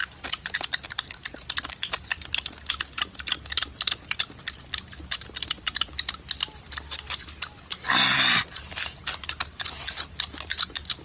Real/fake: real